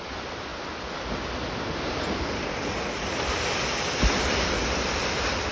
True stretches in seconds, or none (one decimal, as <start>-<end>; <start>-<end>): 0.5-1.9